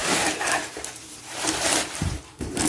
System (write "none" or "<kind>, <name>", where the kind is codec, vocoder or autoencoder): vocoder, BigVGAN v2